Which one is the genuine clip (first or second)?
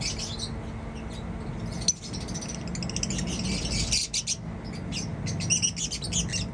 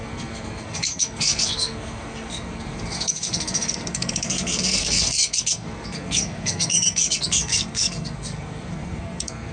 first